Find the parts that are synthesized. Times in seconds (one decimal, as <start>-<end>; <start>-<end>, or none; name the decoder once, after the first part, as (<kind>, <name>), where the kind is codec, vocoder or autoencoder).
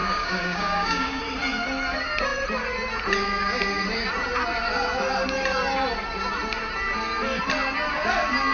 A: 0.0-1.2 (codec, DAC)